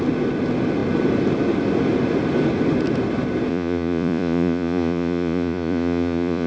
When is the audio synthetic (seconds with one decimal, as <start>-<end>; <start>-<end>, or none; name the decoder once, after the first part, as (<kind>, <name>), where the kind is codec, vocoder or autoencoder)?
3.5-6.5 (vocoder, Vocos)